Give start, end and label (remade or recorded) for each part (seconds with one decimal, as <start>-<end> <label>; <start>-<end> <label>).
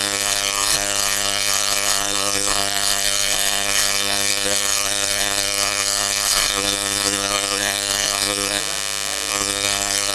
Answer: 0.0-8.6 remade; 8.6-9.3 recorded; 9.3-10.1 remade